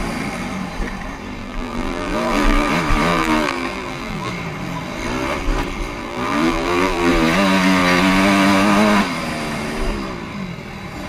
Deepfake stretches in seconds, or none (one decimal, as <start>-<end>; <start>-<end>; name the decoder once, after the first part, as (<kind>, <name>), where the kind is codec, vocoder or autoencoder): 1.4-2.7 (vocoder, BigVGAN v2); 3.1-4.3; 6.0-7.1